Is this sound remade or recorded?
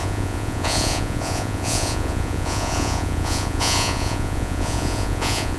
remade